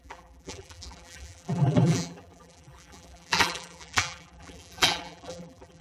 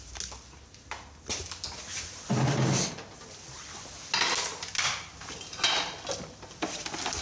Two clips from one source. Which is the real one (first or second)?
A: second